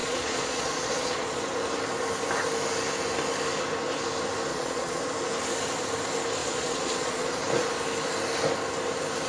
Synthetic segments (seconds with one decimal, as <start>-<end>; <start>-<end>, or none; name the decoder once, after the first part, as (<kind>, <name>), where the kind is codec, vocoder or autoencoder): 0.0-1.4 (vocoder, Vocos); 4.5-5.0; 6.4-7.4